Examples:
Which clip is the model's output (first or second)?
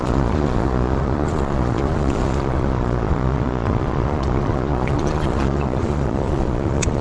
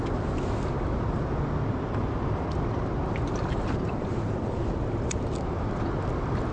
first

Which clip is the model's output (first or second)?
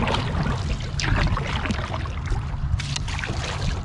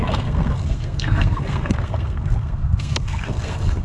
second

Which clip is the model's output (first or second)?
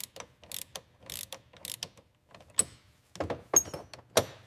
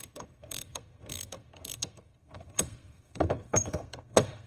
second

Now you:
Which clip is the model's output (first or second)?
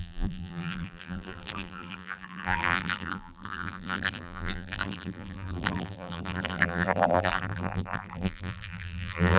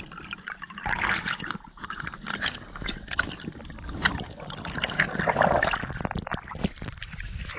first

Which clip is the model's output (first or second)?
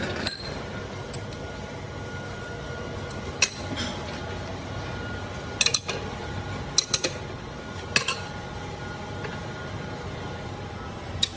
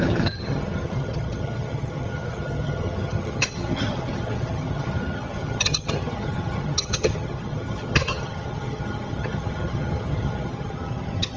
second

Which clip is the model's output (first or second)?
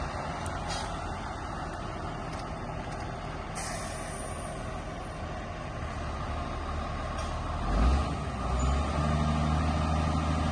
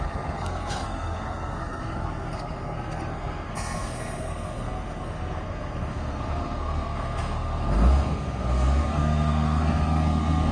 second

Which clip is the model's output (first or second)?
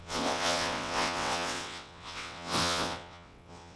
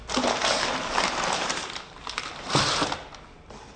first